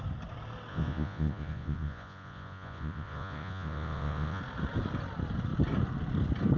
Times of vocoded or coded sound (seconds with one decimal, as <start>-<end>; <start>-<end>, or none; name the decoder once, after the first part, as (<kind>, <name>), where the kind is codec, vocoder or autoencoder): 0.7-4.4 (vocoder, Vocos)

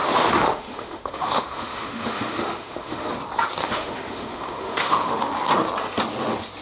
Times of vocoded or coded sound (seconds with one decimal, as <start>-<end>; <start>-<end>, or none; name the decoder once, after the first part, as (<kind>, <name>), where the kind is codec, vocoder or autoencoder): 0.0-3.1 (autoencoder, DAC-VAE); 3.6-5.3

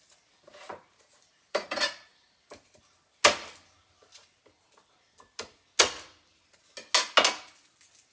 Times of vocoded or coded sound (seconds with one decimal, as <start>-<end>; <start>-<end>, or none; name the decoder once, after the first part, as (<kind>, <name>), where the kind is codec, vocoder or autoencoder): 0.5-2.8 (vocoder, BigVGAN v2)

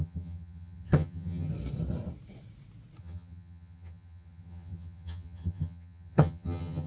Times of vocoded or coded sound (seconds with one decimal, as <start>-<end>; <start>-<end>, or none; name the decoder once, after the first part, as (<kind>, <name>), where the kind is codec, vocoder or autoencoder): 0.0-1.5 (vocoder, HiFi-GAN); 3.0-6.9

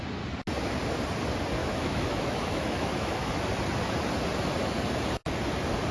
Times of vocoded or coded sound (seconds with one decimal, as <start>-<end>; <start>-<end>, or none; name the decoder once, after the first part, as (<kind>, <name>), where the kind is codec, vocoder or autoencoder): 1.6-3.4 (autoencoder, DAC-VAE)

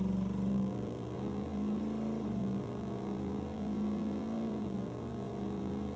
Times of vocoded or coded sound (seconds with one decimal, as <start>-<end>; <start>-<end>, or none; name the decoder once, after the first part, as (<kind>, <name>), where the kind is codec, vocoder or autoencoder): 0.5-1.8 (vocoder, BigVGAN v2); 2.4-6.0

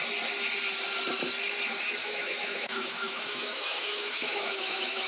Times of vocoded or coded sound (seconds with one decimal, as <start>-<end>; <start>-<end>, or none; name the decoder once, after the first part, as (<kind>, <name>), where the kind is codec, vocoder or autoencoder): 2.0-5.1 (autoencoder, DAC-VAE)